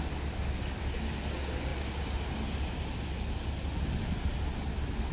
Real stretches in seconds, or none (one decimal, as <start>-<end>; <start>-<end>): 0.0-5.1